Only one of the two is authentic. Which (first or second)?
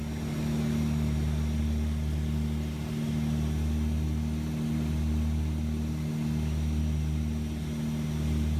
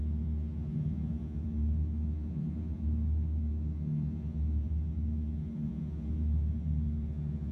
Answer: first